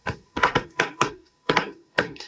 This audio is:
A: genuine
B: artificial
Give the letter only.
B